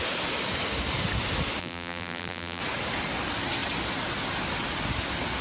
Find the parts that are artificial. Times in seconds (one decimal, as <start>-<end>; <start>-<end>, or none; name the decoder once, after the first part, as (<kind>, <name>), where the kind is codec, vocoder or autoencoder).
1.6-2.6 (vocoder, BigVGAN v2)